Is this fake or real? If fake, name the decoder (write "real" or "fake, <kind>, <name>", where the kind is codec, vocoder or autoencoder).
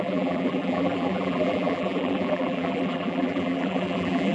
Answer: fake, vocoder, BigVGAN v2